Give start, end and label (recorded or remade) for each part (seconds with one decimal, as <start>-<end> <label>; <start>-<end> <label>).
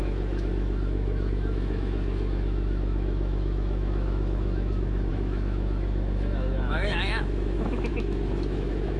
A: 0.0-9.0 remade